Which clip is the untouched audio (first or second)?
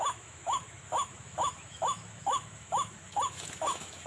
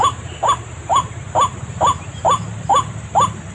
second